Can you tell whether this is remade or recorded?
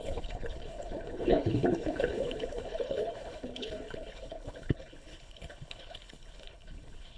remade